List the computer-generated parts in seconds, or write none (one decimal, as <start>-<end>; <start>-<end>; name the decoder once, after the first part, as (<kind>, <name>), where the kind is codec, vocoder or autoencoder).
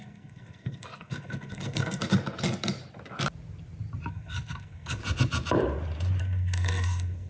0.0-2.0 (codec, SNAC); 4.1-5.0; 6.2-7.3